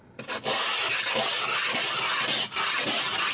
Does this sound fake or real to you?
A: real